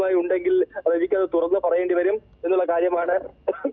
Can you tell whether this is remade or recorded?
recorded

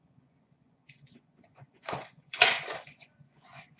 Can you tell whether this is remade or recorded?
remade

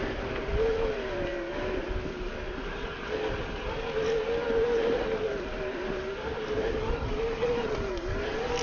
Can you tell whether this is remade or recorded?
recorded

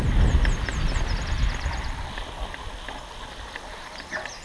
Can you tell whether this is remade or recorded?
recorded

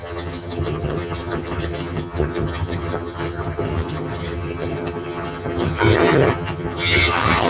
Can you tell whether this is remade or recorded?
remade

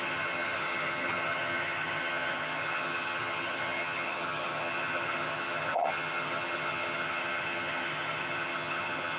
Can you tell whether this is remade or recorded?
remade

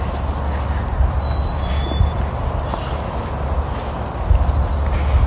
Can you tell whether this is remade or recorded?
recorded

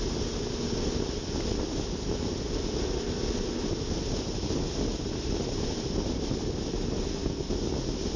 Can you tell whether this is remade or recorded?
recorded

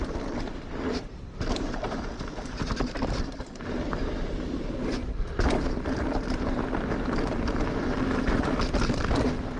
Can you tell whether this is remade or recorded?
remade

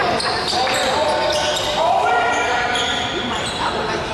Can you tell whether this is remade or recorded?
recorded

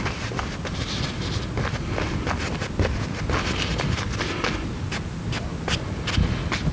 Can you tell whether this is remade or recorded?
recorded